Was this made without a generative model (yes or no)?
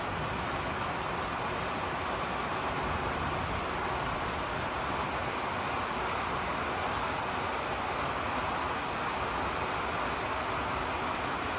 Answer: yes